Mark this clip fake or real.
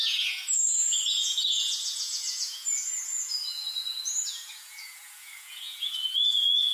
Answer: fake